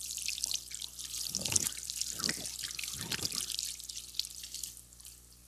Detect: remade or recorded remade